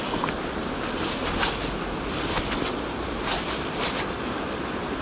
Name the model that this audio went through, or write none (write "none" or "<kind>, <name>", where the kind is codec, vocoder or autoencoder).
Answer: none